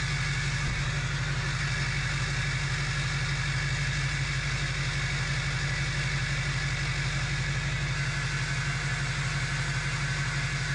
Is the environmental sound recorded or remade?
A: recorded